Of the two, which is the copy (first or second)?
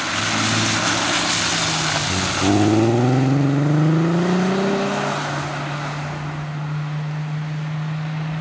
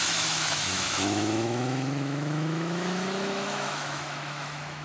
second